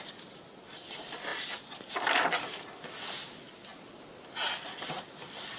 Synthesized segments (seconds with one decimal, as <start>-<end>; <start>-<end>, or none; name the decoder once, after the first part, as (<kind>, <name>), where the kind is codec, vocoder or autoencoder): none